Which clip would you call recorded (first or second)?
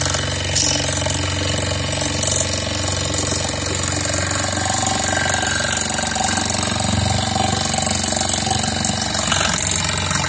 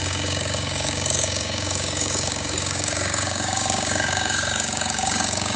first